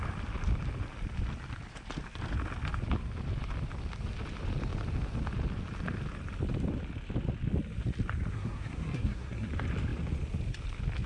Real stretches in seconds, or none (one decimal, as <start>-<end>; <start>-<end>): 0.0-8.3; 9.5-11.1

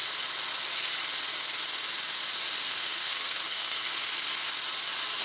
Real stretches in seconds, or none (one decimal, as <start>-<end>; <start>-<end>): 0.0-2.6; 3.9-5.2

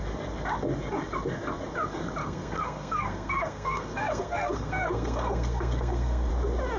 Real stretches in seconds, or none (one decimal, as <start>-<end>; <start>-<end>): 0.0-2.2; 6.3-6.8

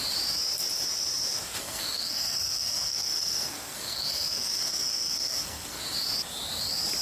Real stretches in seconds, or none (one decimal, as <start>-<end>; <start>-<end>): 0.0-1.6; 5.8-7.0

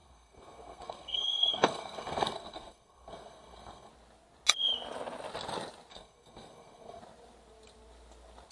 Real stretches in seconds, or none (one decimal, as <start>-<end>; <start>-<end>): 3.9-5.9; 7.0-8.5